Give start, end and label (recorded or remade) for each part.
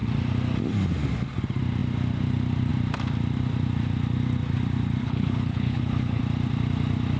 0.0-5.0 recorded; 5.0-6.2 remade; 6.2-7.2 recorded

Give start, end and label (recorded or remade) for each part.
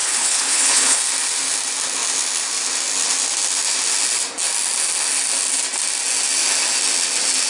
0.0-1.0 remade; 1.0-7.5 recorded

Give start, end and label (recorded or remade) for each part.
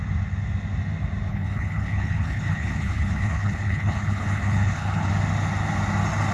0.0-1.3 recorded; 1.3-5.1 remade; 5.1-6.3 recorded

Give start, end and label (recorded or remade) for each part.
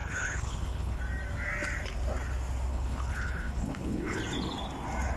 0.0-1.0 remade; 1.0-2.7 recorded; 2.7-4.2 remade; 4.2-5.2 recorded